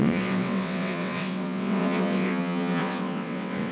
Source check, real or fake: fake